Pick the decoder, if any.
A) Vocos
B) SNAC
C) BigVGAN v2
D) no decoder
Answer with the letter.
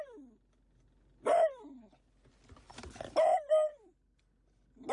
D